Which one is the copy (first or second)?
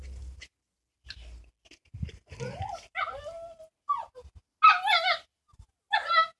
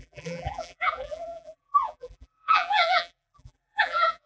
second